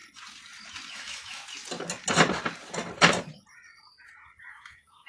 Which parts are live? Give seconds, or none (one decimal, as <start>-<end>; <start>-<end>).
0.0-0.9; 1.4-4.5